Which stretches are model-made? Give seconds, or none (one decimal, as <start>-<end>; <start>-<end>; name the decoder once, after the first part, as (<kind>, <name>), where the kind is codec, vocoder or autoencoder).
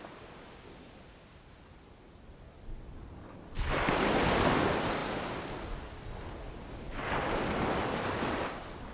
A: none